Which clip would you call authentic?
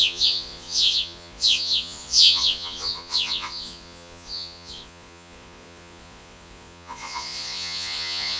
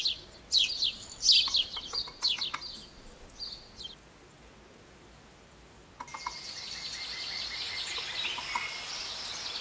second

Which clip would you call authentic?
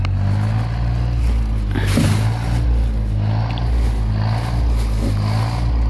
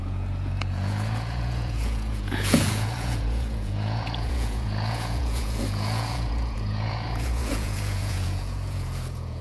first